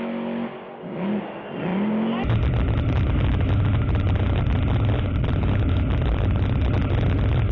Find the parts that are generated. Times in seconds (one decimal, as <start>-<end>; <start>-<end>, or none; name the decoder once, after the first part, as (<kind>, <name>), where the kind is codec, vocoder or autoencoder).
none